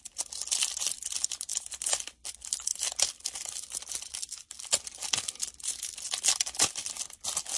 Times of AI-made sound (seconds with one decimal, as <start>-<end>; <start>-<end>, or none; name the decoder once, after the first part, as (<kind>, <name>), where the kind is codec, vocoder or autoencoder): none